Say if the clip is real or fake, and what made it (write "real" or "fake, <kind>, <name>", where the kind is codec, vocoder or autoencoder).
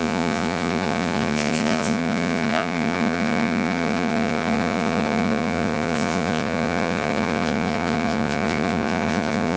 fake, vocoder, Vocos